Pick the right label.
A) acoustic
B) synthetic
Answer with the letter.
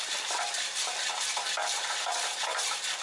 B